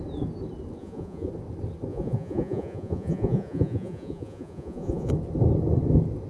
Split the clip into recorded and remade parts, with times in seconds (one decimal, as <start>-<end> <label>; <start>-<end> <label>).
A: 0.0-0.8 recorded; 0.8-1.3 remade; 1.3-1.9 recorded; 1.9-5.1 remade; 5.1-6.3 recorded